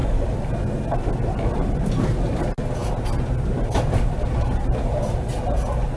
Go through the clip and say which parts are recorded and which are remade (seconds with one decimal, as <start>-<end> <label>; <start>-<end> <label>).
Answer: 0.0-6.0 recorded